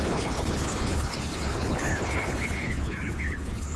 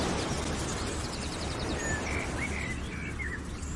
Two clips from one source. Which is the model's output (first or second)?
first